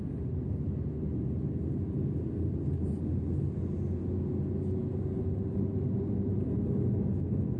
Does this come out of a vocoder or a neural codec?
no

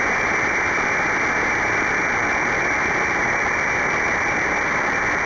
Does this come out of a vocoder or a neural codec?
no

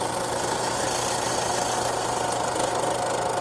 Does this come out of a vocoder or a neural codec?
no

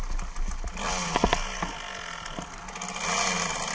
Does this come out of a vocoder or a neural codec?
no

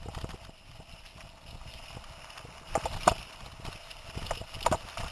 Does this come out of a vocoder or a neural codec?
no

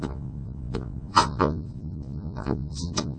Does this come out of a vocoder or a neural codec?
yes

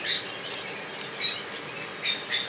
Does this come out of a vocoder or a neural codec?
no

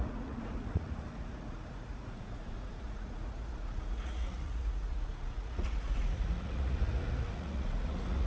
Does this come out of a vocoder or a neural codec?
yes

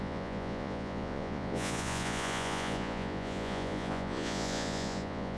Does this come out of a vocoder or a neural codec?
yes